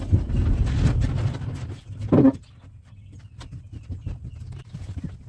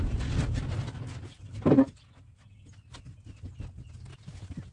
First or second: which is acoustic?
second